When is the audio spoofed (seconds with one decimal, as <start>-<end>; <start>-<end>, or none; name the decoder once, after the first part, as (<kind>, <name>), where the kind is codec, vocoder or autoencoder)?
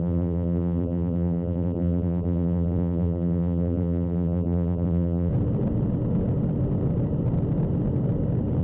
0.0-5.3 (vocoder, BigVGAN v2)